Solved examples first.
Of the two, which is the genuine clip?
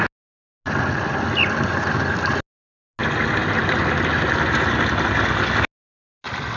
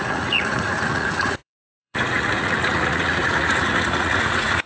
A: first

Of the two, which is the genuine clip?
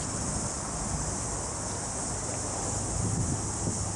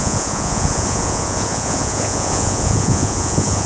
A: first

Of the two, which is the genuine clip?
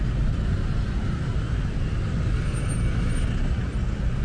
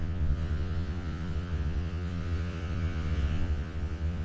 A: first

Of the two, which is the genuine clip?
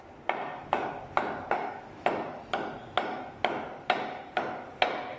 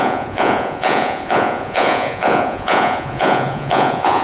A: first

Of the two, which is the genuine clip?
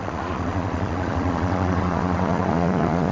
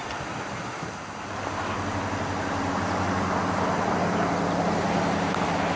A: second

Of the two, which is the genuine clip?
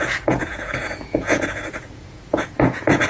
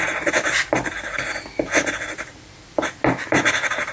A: second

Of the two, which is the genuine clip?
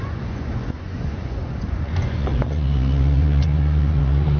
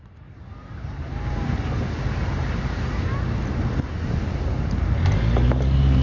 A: second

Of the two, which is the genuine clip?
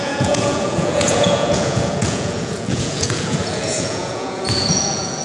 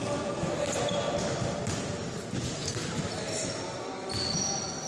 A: second